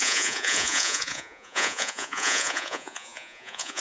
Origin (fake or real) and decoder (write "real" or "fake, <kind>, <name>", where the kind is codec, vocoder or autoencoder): fake, vocoder, Vocos